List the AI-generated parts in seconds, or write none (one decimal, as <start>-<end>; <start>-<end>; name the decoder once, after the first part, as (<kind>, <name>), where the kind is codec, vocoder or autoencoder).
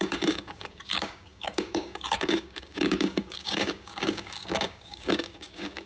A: 0.0-5.9 (codec, DAC)